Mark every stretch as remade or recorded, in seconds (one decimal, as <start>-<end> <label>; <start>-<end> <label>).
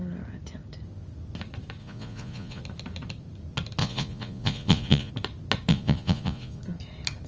0.0-1.8 recorded; 1.8-2.6 remade; 2.6-3.8 recorded; 3.8-5.1 remade; 5.1-5.7 recorded; 5.7-6.6 remade; 6.6-7.3 recorded